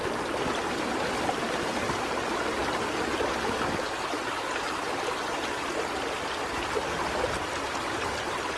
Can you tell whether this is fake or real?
real